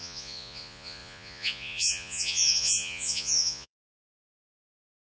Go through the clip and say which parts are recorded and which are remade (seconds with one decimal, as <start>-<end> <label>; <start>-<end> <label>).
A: 0.0-5.1 remade